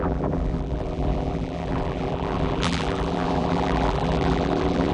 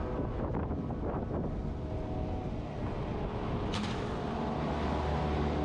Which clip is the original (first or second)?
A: second